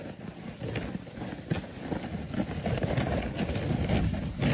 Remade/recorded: recorded